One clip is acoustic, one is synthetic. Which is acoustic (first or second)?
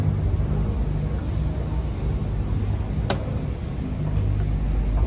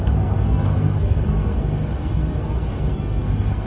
first